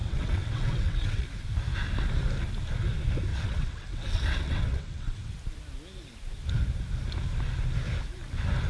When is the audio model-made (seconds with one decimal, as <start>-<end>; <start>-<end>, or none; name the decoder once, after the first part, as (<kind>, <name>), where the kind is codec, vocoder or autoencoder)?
0.0-1.2 (vocoder, WaveNeXt); 3.3-5.3